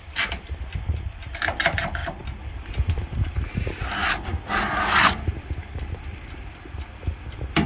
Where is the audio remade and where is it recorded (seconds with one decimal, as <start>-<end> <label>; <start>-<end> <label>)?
0.0-7.7 recorded